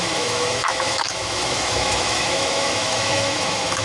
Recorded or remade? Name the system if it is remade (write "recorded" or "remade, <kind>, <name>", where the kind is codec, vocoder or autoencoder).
remade, autoencoder, DAC-VAE